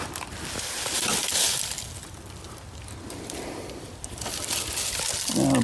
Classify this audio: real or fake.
real